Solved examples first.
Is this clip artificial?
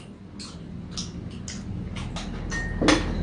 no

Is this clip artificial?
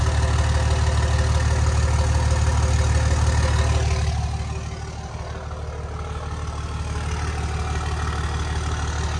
no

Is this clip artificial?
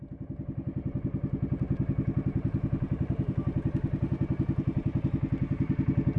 no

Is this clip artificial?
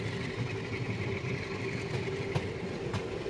no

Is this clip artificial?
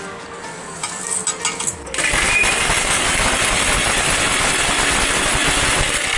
no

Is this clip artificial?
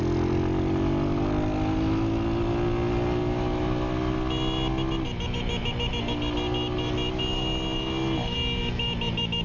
no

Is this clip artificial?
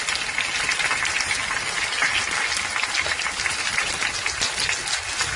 no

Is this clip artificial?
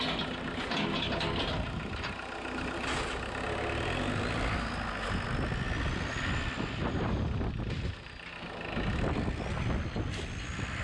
no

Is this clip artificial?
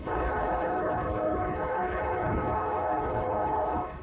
yes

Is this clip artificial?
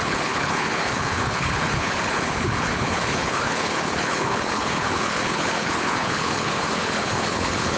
yes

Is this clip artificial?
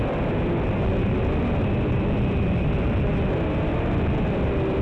no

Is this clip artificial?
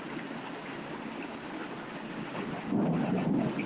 no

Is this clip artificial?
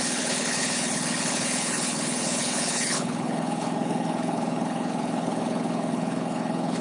yes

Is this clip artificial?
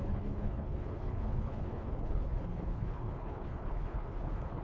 yes